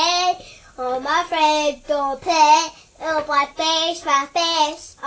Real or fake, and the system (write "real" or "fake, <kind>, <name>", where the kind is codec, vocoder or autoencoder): real